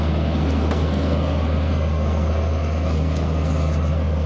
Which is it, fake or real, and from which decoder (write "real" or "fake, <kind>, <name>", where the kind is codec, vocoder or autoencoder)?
fake, codec, SNAC